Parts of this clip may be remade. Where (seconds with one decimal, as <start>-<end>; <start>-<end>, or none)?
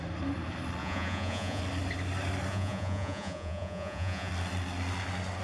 0.8-1.6; 2.5-4.3